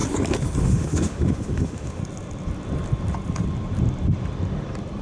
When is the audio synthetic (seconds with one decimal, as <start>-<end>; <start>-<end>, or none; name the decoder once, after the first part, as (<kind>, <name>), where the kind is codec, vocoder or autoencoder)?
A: 0.6-2.0 (autoencoder, DAC-VAE)